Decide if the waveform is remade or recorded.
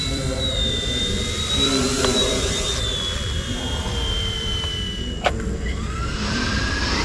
remade